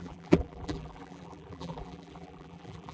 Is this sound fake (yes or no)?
yes